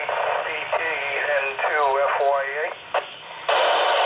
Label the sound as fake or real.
real